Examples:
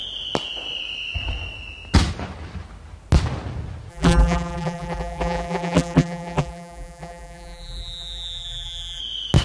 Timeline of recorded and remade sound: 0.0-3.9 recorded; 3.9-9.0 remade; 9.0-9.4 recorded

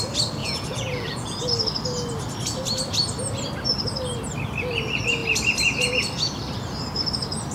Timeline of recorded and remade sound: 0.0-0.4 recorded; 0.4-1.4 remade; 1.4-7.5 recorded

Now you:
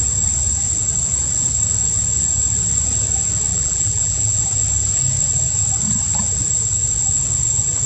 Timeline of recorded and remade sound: 0.0-3.5 recorded; 3.5-4.4 remade; 4.4-7.9 recorded

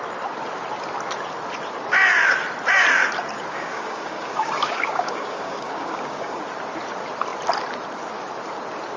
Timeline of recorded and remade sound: 0.0-3.5 recorded; 3.5-6.4 remade; 6.4-9.0 recorded

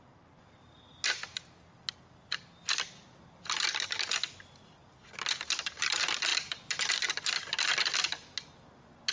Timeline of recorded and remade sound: 0.0-9.1 recorded

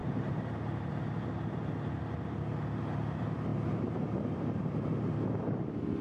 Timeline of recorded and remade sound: 0.0-0.9 remade; 0.9-6.0 recorded

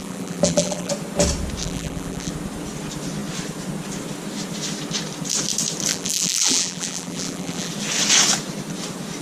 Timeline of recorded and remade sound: 0.0-0.9 remade; 0.9-1.6 recorded; 1.6-2.3 remade; 2.3-5.9 recorded; 5.9-7.7 remade; 7.7-9.2 recorded